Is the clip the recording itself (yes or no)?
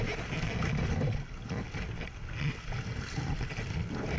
yes